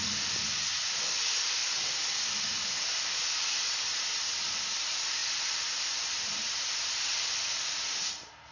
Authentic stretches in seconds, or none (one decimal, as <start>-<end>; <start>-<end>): 0.0-1.6; 2.5-5.2; 7.6-8.5